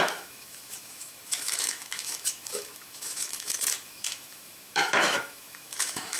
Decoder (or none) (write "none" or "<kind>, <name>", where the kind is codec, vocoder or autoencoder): autoencoder, DAC-VAE